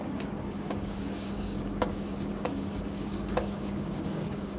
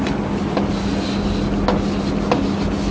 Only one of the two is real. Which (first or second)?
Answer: second